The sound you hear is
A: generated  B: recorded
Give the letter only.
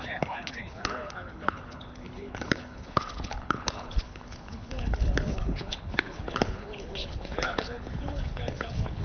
A